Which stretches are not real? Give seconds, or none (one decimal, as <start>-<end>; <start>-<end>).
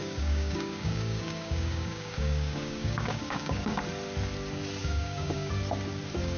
0.0-3.8; 4.8-5.5